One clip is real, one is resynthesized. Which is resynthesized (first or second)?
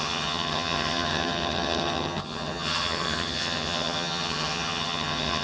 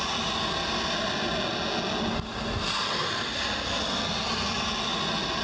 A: first